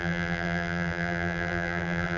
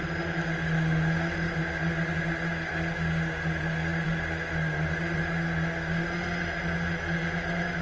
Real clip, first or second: second